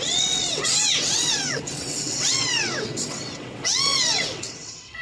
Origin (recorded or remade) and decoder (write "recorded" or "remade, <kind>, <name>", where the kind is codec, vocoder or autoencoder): remade, vocoder, WaveNeXt